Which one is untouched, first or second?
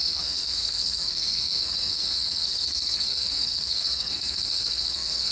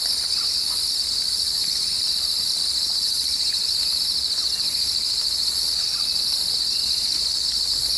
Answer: second